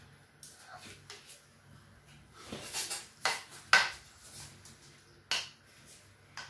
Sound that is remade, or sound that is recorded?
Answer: recorded